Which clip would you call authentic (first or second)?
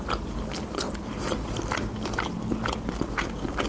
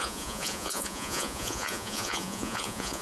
first